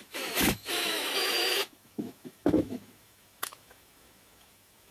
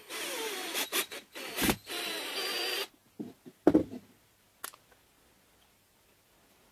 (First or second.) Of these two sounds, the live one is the second